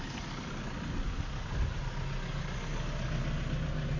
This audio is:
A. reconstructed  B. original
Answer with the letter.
B